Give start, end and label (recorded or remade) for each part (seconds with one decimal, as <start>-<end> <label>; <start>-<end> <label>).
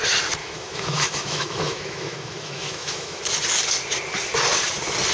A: 0.0-0.4 recorded; 0.4-3.2 remade; 3.2-5.1 recorded